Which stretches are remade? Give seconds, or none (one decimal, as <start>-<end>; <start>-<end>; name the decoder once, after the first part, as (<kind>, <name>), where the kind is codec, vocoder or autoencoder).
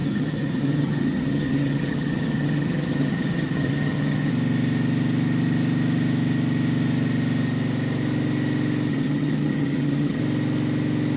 0.0-4.3 (vocoder, HiFi-GAN); 8.9-10.2